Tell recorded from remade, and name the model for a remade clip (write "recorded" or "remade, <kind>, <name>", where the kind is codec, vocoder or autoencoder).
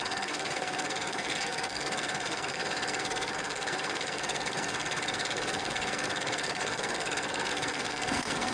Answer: remade, codec, SNAC